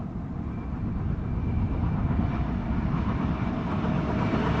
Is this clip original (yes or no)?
yes